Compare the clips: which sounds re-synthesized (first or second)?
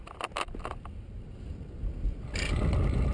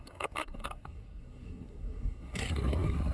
second